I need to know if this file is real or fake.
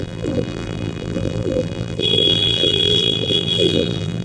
fake